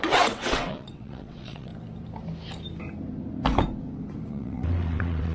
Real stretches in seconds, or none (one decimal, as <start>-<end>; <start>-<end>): 1.7-4.3